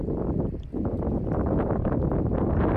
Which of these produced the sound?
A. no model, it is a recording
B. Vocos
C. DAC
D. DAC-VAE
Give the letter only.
A